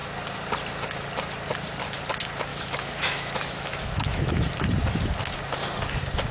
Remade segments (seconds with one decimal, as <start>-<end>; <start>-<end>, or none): 2.5-4.5